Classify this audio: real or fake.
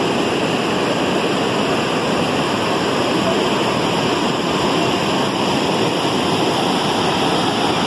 real